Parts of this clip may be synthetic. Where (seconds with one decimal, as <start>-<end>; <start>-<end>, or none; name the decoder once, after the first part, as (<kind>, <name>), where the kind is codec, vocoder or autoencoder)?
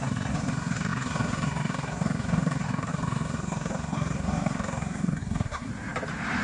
0.0-5.7 (codec, SNAC)